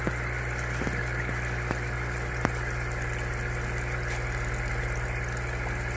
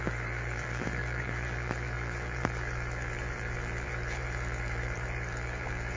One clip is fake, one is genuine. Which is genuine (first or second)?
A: first